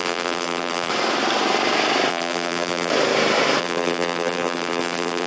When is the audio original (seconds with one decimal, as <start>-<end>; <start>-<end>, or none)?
0.9-2.1; 2.9-3.6